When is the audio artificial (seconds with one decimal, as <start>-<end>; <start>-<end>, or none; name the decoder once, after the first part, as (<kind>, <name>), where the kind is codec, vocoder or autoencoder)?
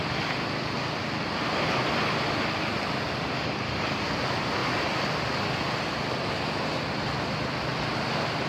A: none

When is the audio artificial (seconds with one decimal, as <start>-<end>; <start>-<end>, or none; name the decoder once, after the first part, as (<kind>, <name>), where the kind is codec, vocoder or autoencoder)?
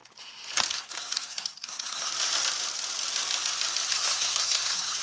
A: 0.7-2.1 (codec, SNAC); 3.9-5.0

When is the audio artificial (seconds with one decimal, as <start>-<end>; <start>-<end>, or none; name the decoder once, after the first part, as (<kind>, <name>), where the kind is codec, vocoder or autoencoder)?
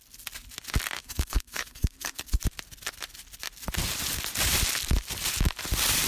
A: 1.0-2.4 (codec, SNAC)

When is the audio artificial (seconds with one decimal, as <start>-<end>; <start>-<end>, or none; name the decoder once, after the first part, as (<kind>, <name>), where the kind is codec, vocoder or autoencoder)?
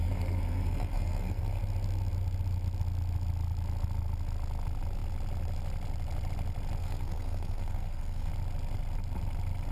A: 0.0-1.6 (codec, SNAC); 6.8-8.3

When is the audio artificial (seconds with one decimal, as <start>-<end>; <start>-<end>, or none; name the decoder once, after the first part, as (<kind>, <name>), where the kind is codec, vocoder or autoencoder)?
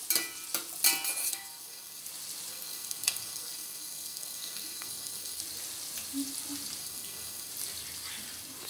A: 1.2-2.0 (codec, SNAC); 2.5-5.4; 6.8-7.5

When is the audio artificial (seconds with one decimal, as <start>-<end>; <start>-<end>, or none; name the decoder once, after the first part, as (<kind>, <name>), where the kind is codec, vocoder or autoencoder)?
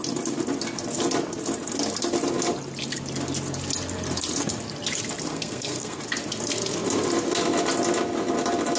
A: 5.3-6.0 (codec, SNAC)